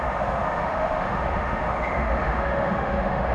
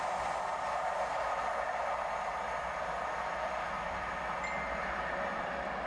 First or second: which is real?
second